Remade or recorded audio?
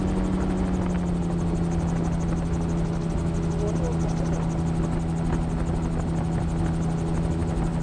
recorded